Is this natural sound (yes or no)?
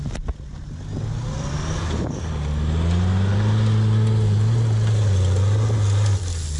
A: yes